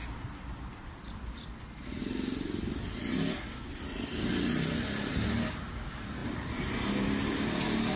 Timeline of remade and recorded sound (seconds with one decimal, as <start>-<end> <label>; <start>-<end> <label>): 0.0-8.0 recorded